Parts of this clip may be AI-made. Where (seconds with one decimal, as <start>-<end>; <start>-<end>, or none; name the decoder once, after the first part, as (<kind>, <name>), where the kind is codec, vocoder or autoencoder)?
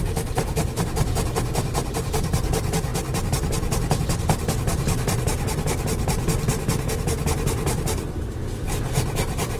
none